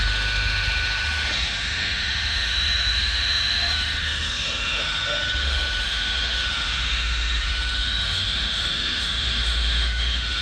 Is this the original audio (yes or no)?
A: no